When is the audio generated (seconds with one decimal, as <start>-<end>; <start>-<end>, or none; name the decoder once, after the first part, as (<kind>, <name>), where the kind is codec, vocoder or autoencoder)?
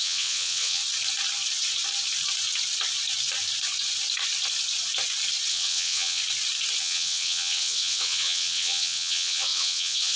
0.0-0.8 (vocoder, WaveNeXt); 5.5-6.2; 6.8-10.2